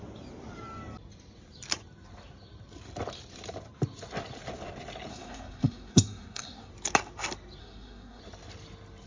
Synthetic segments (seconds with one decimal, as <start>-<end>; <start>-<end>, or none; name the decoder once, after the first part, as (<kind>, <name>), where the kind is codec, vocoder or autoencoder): 5.1-6.7 (codec, SNAC); 7.6-8.2